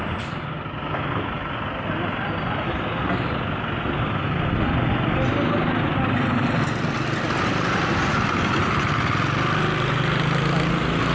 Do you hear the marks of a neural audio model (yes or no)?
no